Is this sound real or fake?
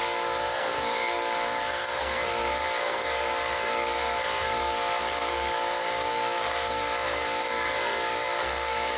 fake